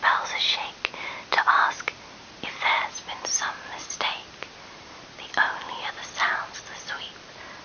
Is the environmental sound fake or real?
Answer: real